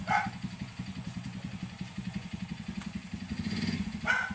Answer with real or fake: fake